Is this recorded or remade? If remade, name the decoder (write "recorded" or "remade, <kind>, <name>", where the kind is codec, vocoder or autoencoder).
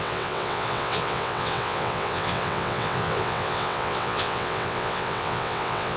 remade, vocoder, WaveNeXt